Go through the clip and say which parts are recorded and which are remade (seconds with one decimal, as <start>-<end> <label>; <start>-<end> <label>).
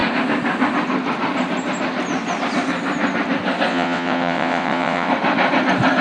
0.0-3.7 recorded; 3.7-5.1 remade; 5.1-6.0 recorded